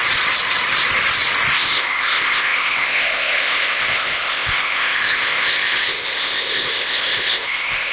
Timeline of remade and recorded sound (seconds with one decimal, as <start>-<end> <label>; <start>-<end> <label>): 0.0-1.5 recorded; 1.5-7.9 remade